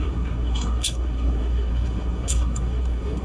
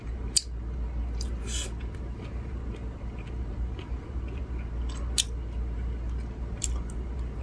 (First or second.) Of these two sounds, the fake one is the first